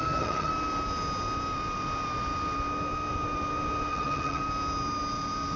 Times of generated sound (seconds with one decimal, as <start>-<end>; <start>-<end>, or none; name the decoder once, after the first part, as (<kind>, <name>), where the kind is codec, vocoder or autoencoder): 0.0-0.5 (vocoder, HiFi-GAN); 3.9-4.4